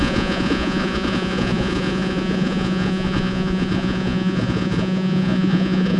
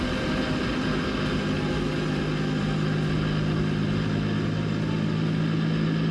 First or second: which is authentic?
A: second